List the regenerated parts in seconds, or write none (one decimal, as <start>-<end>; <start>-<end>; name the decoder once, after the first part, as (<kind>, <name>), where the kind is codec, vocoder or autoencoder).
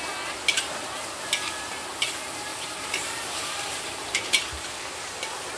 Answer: 2.5-4.7 (vocoder, BigVGAN v2)